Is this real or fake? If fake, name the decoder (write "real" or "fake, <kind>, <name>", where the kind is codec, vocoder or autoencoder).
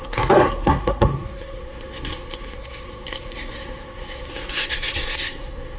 fake, codec, SNAC